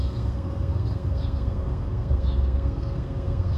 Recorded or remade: remade